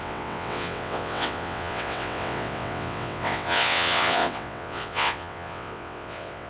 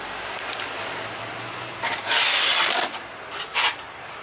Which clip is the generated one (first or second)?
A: first